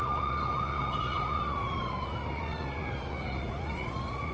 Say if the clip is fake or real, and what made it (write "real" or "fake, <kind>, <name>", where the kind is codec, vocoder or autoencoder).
fake, vocoder, Vocos